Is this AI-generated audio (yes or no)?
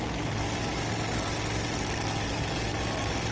no